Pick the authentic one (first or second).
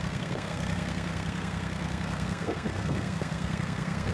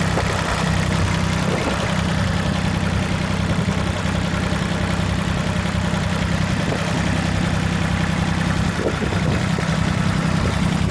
second